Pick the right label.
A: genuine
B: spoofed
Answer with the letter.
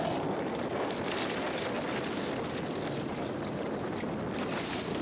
A